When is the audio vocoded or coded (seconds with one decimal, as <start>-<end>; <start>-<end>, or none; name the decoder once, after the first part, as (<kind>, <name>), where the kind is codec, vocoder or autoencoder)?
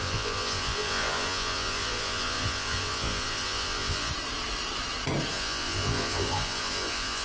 0.0-4.1 (vocoder, Vocos); 5.3-7.2